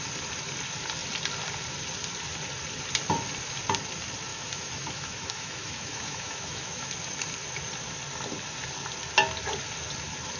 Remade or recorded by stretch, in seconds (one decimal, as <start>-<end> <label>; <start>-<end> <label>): 0.0-4.3 recorded; 4.3-6.9 remade; 6.9-10.4 recorded